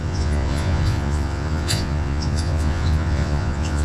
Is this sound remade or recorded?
remade